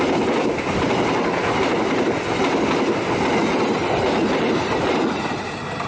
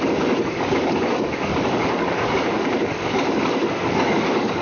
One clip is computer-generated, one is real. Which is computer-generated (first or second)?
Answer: second